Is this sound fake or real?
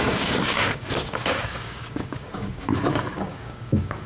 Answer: fake